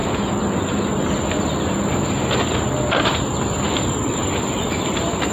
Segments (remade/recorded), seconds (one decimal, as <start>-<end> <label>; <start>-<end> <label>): 0.0-0.6 recorded; 0.6-1.9 remade; 1.9-3.3 recorded; 3.3-5.3 remade